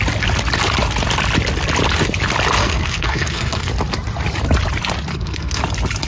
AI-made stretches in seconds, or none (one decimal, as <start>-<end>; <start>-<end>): 2.6-3.7; 5.1-5.6